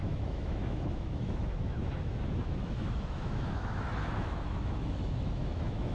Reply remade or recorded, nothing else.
remade